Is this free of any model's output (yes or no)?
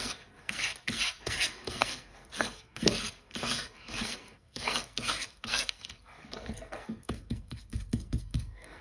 no